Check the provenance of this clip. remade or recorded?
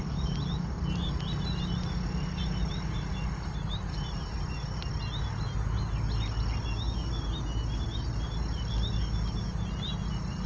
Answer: recorded